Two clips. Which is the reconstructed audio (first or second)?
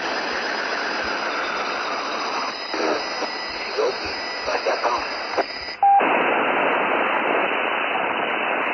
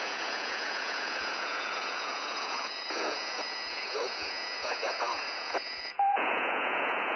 second